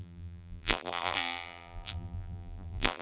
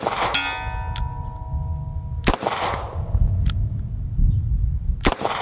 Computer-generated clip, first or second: first